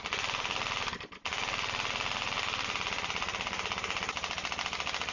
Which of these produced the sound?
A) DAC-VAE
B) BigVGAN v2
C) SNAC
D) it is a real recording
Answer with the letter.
D